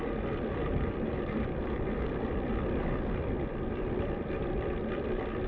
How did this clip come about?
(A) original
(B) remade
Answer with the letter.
A